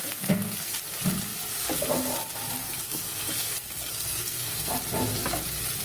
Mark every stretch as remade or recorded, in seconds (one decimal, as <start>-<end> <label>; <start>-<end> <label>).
0.0-0.8 remade; 0.8-2.6 recorded; 2.6-4.7 remade; 4.7-5.8 recorded